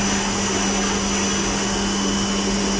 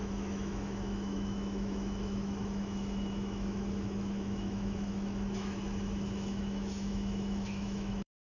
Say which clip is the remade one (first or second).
second